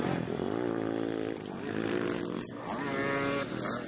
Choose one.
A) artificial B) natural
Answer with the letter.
B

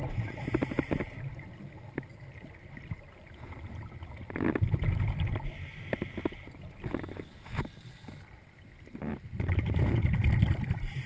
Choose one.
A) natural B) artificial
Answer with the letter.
A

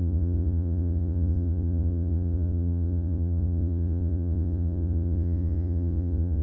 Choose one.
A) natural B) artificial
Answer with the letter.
B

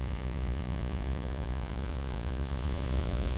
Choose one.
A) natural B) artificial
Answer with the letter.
B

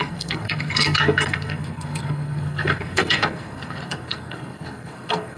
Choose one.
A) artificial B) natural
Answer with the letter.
A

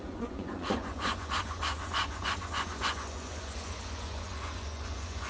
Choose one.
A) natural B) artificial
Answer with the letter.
B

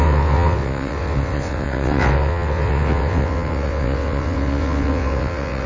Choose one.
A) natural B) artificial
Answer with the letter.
B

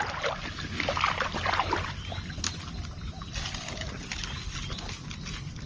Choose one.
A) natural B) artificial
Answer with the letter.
A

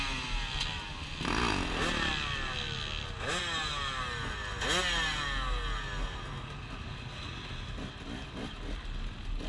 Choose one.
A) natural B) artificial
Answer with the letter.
A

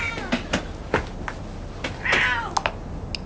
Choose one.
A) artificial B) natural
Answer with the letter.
B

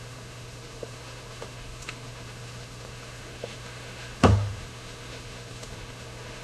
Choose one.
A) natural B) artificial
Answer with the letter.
B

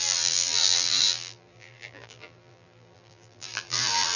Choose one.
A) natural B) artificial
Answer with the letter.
B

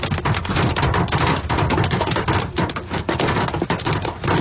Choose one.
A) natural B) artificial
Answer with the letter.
A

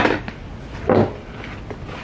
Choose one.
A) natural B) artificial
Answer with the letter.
A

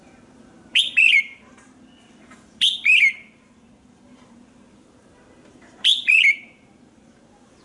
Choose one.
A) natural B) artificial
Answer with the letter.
B